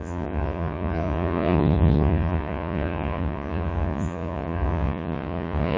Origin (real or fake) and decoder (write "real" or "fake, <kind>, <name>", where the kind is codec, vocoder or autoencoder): fake, vocoder, Vocos